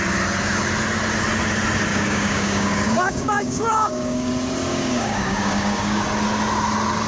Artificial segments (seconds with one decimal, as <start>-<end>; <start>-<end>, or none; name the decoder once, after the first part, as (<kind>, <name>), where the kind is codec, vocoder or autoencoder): 1.9-4.3 (codec, DAC); 4.7-6.0